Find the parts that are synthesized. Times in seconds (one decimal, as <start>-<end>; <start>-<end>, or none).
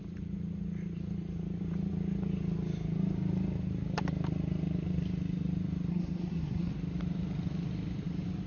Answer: 5.9-6.7